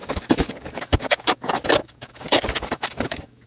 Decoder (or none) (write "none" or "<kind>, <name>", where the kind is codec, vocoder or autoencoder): codec, DAC